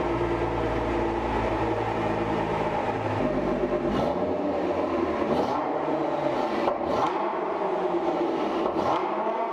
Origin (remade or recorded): remade